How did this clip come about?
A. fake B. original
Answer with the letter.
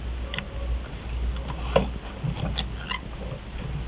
B